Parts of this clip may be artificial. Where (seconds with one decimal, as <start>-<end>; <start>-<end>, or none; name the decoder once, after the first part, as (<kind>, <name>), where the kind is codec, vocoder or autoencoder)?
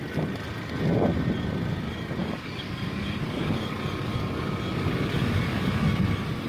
2.2-6.0 (codec, DAC)